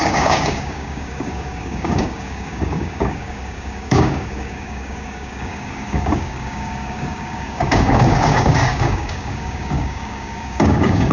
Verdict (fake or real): fake